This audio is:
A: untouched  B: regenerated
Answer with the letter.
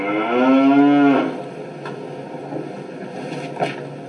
A